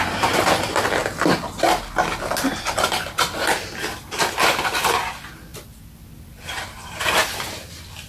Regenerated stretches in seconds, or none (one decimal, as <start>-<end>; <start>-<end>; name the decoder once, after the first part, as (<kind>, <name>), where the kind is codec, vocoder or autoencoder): none